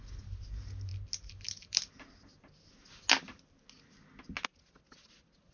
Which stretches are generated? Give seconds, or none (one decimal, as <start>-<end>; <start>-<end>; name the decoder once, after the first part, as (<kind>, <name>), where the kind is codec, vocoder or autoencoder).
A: none

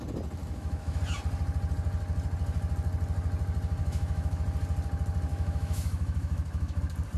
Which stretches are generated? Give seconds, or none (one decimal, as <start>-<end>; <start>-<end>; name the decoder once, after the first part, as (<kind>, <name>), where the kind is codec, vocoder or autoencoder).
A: 0.4-1.0 (autoencoder, DAC-VAE); 3.8-4.4; 5.3-6.8

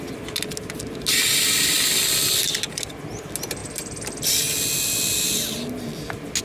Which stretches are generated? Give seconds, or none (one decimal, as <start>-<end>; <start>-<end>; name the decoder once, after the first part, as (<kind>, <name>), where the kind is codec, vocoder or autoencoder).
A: none